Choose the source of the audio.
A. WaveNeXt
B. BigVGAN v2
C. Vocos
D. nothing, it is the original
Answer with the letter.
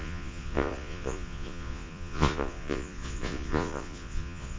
C